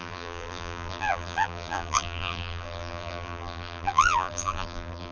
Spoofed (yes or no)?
yes